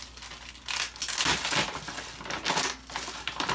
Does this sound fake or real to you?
real